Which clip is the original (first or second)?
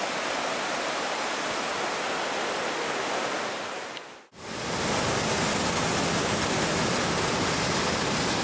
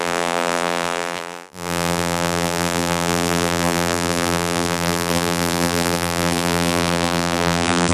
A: first